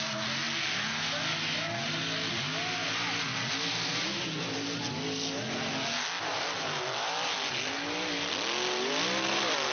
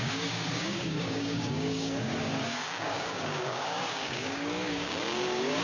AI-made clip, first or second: second